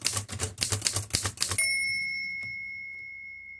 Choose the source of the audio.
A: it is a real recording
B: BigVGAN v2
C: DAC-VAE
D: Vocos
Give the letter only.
A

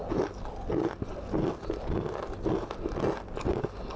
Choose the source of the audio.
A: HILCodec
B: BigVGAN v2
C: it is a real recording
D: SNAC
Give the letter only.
C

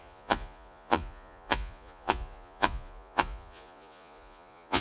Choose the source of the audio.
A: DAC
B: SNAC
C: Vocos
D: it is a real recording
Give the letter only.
C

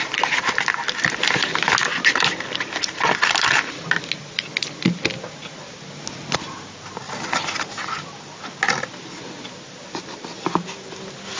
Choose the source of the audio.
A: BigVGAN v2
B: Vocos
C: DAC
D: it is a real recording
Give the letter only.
D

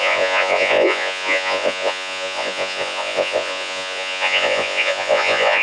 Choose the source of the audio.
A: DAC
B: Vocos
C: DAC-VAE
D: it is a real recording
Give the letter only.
B